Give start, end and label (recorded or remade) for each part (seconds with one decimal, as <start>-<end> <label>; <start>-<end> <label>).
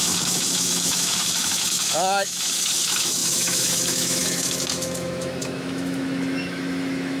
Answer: 0.0-7.2 remade